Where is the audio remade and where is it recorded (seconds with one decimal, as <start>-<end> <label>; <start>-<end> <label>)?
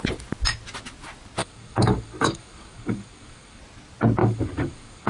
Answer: 0.0-1.4 recorded; 1.4-3.6 remade; 3.6-4.2 recorded; 4.2-5.1 remade